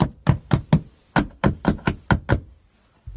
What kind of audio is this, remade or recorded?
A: recorded